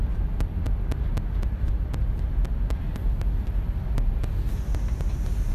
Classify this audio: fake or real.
real